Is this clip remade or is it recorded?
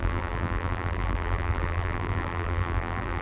remade